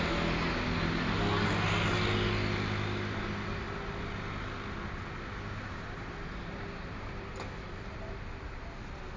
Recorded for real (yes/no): yes